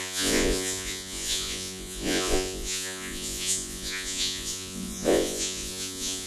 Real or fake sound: fake